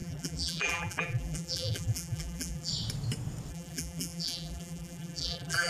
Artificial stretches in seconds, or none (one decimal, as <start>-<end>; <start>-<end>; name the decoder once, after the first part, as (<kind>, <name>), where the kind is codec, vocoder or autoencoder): 0.0-2.7 (vocoder, BigVGAN v2); 3.5-5.7